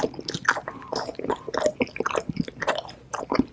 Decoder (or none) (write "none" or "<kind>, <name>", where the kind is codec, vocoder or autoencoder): none